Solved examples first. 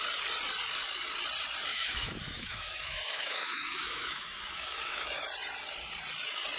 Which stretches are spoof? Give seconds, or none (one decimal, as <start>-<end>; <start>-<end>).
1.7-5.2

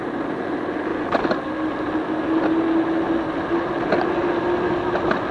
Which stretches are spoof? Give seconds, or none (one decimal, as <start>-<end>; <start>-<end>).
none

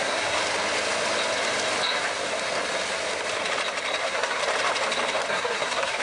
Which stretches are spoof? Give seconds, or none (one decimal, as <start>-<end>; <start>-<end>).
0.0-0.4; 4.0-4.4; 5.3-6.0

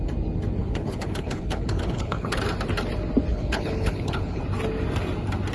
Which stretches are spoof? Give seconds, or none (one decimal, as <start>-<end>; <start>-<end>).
0.6-2.4; 3.3-4.4

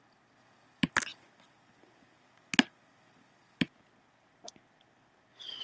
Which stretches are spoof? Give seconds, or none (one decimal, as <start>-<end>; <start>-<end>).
none

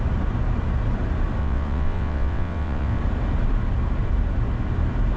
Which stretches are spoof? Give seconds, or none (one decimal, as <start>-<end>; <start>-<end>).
1.4-3.0

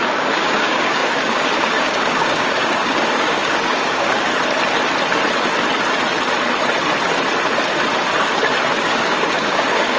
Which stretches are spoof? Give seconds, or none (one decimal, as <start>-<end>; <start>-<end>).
0.0-4.3; 8.8-10.0